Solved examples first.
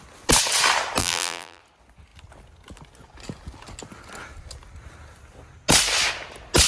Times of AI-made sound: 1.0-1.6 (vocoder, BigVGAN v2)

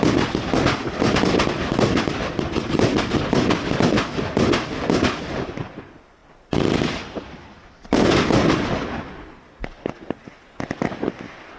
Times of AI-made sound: none

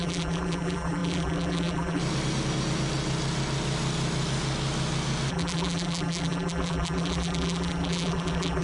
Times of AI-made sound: 0.0-2.0 (vocoder, BigVGAN v2); 5.3-8.6

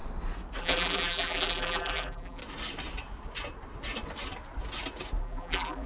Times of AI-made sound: 0.6-2.4 (vocoder, BigVGAN v2); 5.2-5.9

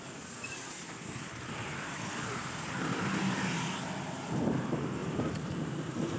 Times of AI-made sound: 1.6-2.5 (vocoder, BigVGAN v2); 5.0-6.2

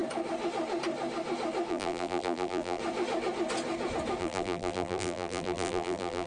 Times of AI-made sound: 1.7-2.8 (vocoder, BigVGAN v2); 4.2-6.3

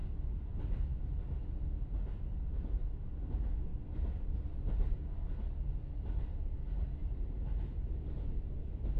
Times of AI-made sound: 3.7-4.5 (vocoder, BigVGAN v2)

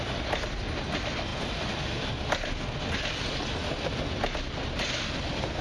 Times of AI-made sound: none